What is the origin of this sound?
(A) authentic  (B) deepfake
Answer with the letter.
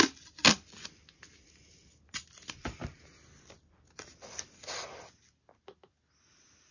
A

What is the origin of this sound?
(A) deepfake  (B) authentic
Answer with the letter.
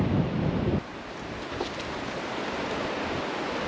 B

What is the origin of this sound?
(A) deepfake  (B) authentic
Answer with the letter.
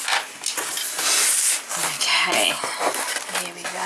B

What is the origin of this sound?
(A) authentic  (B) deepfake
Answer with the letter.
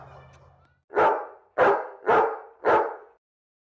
A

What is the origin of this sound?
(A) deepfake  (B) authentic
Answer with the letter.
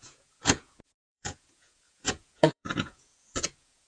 A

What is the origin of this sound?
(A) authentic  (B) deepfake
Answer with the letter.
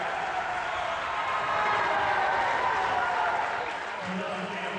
A